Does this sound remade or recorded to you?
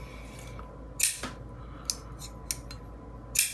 recorded